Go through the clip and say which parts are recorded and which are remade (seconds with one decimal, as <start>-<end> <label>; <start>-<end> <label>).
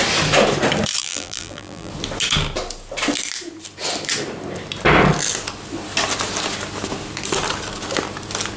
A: 0.0-1.0 recorded; 1.0-1.9 remade; 1.9-8.6 recorded